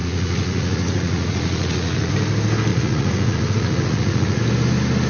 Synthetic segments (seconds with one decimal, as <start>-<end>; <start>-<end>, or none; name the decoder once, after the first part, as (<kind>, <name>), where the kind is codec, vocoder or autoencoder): 0.0-2.1 (vocoder, Vocos); 2.7-4.4